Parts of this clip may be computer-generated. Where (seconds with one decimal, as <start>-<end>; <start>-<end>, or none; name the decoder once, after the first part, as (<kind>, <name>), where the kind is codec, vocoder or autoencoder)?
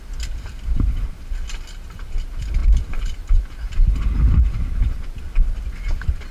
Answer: none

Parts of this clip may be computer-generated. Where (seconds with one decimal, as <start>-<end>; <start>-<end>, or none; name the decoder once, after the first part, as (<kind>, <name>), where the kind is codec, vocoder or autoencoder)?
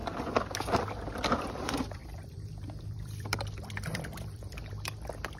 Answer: 0.7-5.4 (vocoder, BigVGAN v2)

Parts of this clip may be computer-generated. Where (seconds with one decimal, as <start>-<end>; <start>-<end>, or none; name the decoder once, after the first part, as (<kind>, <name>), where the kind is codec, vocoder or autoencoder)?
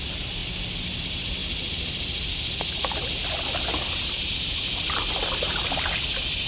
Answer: 1.4-5.3 (vocoder, BigVGAN v2)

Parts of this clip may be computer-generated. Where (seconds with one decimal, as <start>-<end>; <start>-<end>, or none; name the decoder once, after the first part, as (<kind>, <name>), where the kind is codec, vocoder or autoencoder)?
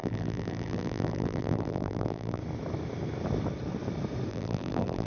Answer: 0.0-2.4 (vocoder, BigVGAN v2); 4.3-5.1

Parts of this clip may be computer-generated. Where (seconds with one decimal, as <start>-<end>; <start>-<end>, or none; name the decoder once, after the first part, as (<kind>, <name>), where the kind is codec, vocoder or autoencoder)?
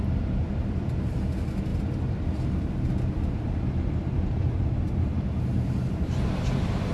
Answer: 0.0-6.9 (vocoder, BigVGAN v2)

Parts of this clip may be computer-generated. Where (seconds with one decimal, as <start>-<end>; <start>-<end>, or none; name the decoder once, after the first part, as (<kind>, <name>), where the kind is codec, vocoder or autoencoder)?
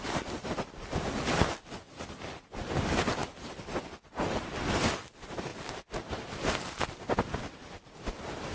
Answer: 0.0-5.5 (vocoder, BigVGAN v2); 6.1-8.5